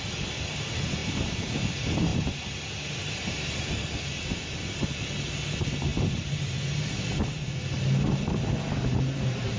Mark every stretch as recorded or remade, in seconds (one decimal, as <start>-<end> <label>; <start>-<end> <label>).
0.0-1.0 recorded; 1.0-1.5 remade; 1.5-2.1 recorded; 2.1-3.3 remade; 3.3-9.6 recorded

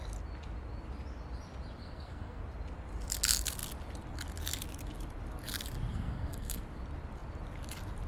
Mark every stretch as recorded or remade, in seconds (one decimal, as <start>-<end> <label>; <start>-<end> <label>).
0.0-1.8 recorded; 1.8-2.4 remade; 2.4-5.9 recorded; 5.9-6.6 remade; 6.6-8.1 recorded

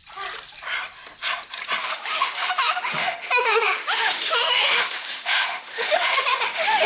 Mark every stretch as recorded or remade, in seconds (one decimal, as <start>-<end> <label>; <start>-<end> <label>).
0.0-1.8 recorded; 1.8-6.9 remade

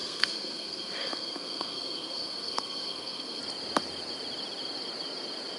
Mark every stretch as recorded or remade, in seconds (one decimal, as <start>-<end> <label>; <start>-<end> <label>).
0.0-3.4 remade; 3.4-5.6 recorded

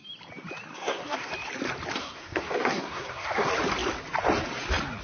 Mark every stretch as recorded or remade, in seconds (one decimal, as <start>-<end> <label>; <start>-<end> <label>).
0.0-0.7 recorded; 0.7-1.3 remade; 1.3-2.0 recorded; 2.0-3.5 remade; 3.5-5.0 recorded

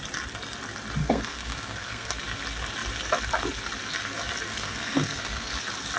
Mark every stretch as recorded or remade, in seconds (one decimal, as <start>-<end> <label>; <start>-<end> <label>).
0.0-1.0 recorded; 1.0-2.2 remade; 2.2-4.5 recorded; 4.5-5.5 remade; 5.5-6.0 recorded

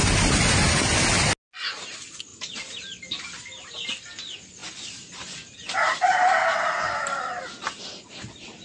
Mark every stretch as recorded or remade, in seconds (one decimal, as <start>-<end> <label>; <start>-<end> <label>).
0.0-1.3 remade; 1.3-2.3 recorded; 2.3-3.7 remade; 3.7-4.6 recorded; 4.6-6.3 remade; 6.3-8.6 recorded